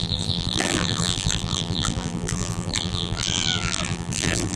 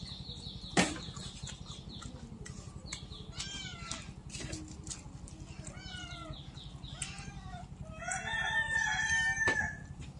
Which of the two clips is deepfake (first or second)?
first